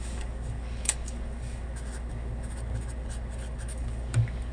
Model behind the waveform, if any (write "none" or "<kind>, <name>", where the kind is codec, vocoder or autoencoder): codec, DAC